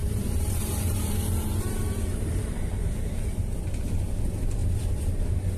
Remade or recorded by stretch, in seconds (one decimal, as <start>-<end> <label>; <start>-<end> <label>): 0.0-3.4 remade; 3.4-4.6 recorded; 4.6-5.6 remade